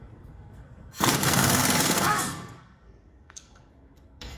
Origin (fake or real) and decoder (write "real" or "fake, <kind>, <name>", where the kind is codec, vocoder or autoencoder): fake, codec, SNAC